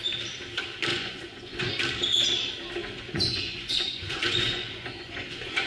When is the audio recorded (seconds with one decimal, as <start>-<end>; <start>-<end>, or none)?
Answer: 0.0-0.9; 1.7-2.8